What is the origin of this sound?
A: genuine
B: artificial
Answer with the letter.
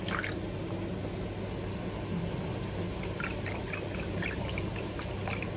A